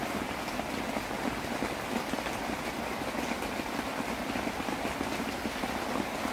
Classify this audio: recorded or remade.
recorded